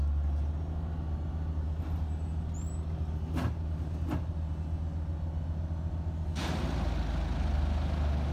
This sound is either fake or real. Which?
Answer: real